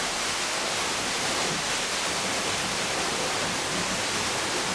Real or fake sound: real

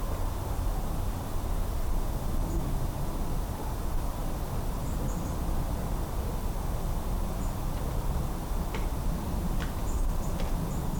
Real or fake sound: real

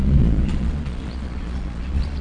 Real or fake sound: fake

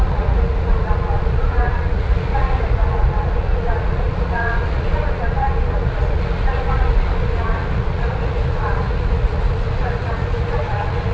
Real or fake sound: fake